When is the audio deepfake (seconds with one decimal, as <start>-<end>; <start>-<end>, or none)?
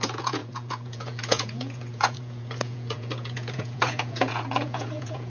0.0-5.3